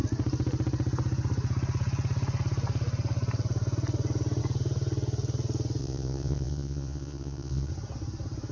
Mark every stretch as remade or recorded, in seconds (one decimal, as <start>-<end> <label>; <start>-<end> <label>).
0.0-5.8 recorded; 5.8-7.7 remade; 7.7-8.5 recorded